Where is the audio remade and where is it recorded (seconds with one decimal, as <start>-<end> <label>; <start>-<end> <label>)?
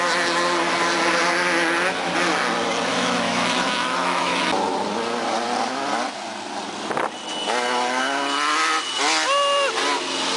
0.0-2.9 recorded; 2.9-4.4 remade; 4.4-10.4 recorded